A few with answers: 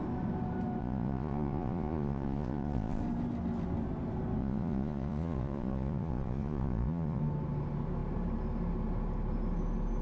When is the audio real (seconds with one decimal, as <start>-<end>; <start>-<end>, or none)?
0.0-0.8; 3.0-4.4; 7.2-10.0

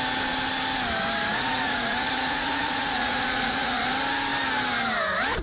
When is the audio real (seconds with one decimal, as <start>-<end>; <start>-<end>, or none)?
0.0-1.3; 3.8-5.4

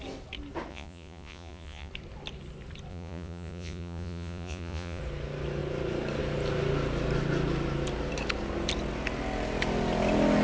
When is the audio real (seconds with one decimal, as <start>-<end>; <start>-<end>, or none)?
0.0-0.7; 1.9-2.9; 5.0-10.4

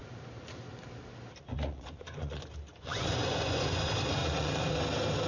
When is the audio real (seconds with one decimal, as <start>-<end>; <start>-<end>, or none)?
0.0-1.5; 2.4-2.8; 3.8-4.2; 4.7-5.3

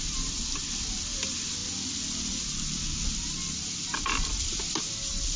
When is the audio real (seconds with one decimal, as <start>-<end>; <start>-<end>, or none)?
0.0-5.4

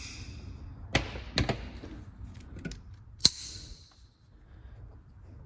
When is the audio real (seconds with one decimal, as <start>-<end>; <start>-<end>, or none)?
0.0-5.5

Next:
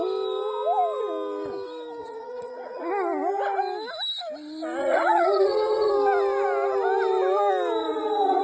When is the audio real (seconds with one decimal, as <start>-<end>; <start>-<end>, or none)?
0.0-2.0; 2.9-4.8; 5.9-7.8

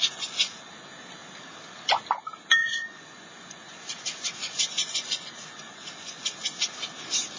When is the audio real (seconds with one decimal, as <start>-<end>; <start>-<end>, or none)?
0.7-2.6; 6.2-7.4